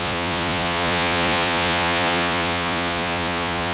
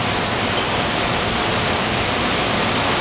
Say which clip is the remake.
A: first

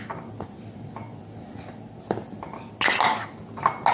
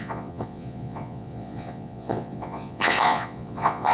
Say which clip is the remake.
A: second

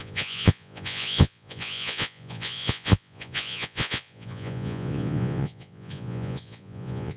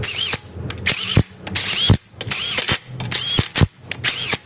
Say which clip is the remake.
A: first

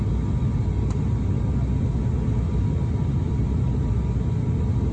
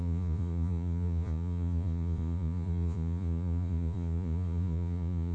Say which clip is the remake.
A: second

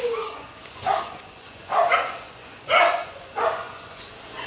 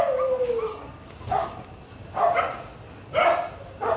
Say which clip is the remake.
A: first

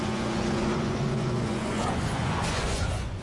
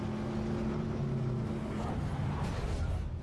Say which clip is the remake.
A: first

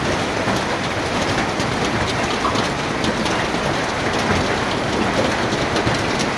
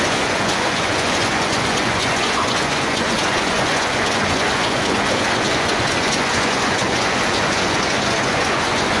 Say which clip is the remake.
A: second